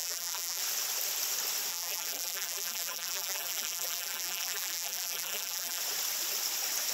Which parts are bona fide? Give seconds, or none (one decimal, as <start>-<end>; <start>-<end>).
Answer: 0.6-1.7; 5.8-6.9